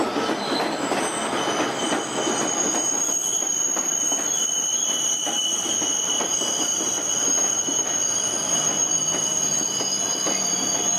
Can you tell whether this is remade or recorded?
recorded